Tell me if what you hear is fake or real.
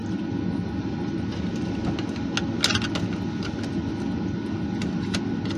real